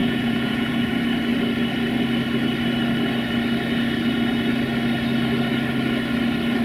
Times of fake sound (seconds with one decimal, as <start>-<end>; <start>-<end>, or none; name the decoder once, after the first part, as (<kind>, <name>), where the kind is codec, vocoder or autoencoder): 0.0-0.9 (vocoder, Vocos)